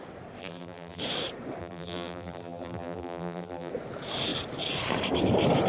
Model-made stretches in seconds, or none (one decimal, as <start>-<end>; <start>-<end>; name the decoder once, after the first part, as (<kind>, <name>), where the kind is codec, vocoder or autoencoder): 0.4-1.0 (vocoder, BigVGAN v2); 1.6-3.7